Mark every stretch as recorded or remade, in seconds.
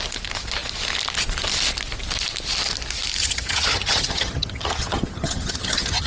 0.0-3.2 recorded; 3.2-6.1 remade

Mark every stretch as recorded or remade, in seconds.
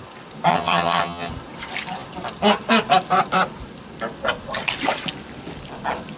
0.0-0.5 recorded; 0.5-1.3 remade; 1.3-6.2 recorded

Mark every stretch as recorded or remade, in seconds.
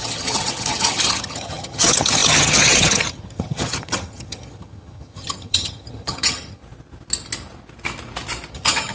0.0-6.6 remade; 6.6-8.5 recorded; 8.5-8.9 remade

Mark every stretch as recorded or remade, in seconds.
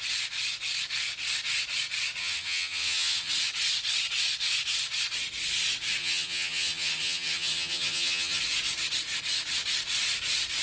0.0-2.2 recorded; 2.2-3.3 remade; 3.3-6.0 recorded; 6.0-8.4 remade; 8.4-10.6 recorded